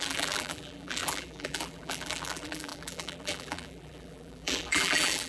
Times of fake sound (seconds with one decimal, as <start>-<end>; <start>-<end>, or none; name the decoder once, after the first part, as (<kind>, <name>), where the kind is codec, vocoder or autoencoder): 0.0-5.3 (vocoder, BigVGAN v2)